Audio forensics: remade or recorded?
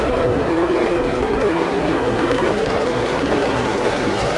remade